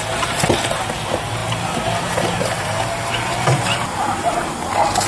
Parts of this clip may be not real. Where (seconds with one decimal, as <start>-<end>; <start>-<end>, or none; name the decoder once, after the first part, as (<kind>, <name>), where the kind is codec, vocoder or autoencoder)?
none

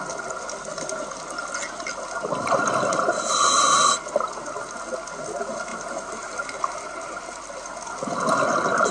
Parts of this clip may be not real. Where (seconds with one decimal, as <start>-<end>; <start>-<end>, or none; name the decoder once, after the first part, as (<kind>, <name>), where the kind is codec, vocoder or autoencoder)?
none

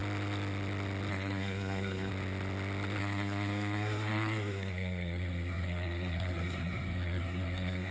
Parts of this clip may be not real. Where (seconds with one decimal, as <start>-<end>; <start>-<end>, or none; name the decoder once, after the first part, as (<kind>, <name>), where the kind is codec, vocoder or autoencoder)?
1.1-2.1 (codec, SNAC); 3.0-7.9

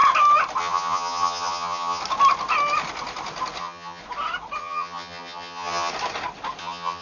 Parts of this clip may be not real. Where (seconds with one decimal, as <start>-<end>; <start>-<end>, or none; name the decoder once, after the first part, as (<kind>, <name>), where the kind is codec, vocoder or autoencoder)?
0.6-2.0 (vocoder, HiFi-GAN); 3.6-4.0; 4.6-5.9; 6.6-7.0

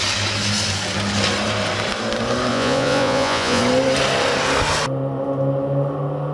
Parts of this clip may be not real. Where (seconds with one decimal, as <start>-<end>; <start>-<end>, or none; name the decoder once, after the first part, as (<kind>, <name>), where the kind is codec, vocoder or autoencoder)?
2.5-3.6 (vocoder, Vocos)